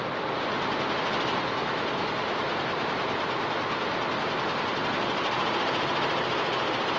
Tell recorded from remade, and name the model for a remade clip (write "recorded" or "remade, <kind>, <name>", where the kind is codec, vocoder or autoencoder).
recorded